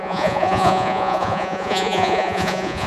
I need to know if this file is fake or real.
fake